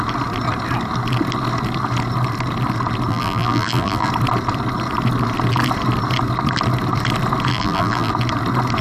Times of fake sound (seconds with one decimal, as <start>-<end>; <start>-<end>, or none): 3.1-4.1; 7.5-8.1